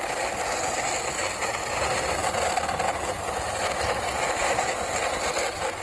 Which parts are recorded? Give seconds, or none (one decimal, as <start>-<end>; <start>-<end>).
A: 0.0-5.8